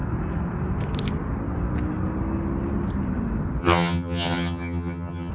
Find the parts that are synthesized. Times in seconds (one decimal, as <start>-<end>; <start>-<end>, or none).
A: 3.6-5.3